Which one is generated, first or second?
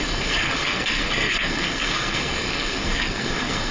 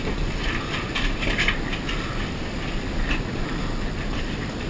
first